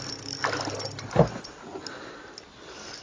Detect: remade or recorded recorded